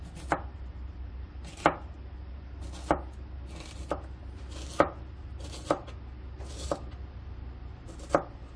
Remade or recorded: recorded